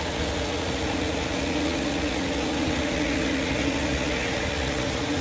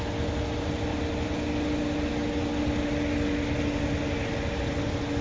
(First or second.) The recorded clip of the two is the second